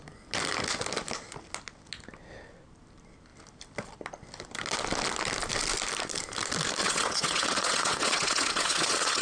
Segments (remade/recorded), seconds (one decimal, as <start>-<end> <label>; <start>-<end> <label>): 0.0-6.8 recorded; 6.8-9.2 remade